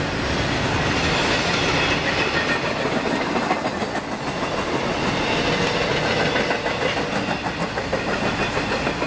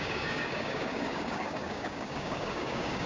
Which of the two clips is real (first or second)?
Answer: first